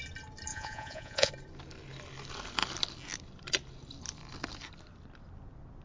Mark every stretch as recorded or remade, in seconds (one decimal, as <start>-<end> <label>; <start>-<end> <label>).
0.0-0.5 recorded; 0.5-1.3 remade; 1.3-5.8 recorded